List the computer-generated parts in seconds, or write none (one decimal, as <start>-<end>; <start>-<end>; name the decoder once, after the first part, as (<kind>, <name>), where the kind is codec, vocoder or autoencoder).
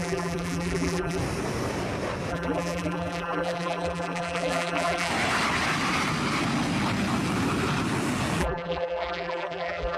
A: 0.0-1.2 (vocoder, BigVGAN v2); 2.3-5.1; 8.4-10.0